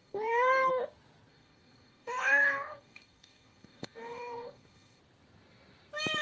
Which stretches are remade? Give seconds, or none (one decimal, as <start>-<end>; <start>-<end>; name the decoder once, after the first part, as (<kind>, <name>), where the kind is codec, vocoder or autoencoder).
0.0-0.7 (codec, DAC); 1.3-5.0